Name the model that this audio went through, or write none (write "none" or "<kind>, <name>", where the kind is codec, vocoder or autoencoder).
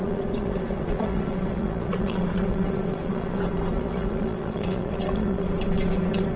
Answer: vocoder, Vocos